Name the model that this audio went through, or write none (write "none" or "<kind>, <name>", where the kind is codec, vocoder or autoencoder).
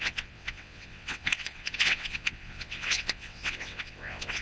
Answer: vocoder, WaveNeXt